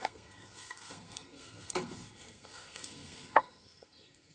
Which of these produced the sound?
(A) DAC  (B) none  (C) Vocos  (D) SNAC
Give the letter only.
D